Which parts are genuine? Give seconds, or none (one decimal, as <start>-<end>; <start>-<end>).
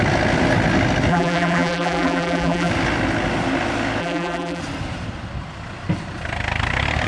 0.0-1.1; 2.7-4.0; 4.6-7.1